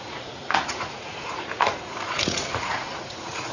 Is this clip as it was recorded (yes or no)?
no